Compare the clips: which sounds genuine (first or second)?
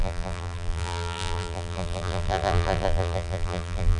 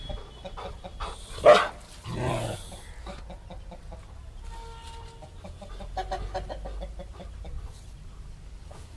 second